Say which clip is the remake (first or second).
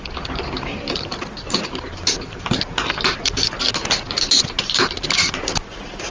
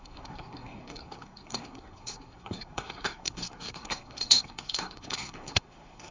second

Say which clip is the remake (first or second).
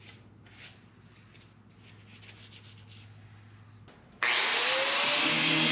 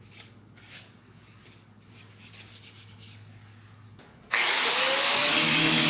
second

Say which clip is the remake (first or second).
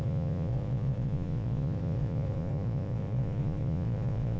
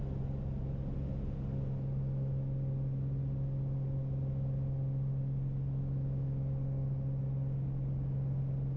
first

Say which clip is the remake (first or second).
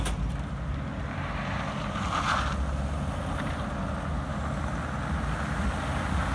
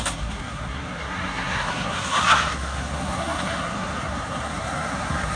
second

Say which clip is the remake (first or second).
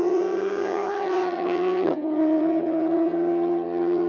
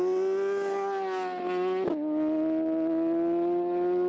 first